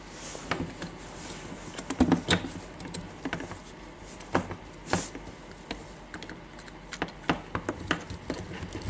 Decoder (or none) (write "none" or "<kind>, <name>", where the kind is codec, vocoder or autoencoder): none